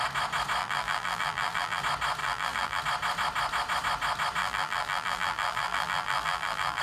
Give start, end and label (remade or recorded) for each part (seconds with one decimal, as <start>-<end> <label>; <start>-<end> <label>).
0.0-0.6 recorded; 0.6-1.8 remade; 1.8-2.2 recorded; 2.2-2.8 remade; 2.8-4.4 recorded; 4.4-6.8 remade